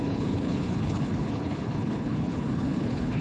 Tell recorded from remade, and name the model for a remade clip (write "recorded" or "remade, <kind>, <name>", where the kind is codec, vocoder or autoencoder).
remade, codec, HILCodec